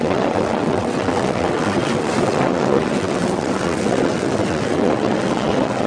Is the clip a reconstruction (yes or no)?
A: yes